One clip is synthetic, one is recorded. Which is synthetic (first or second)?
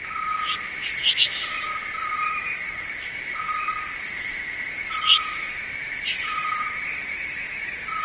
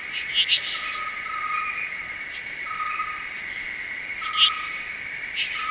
first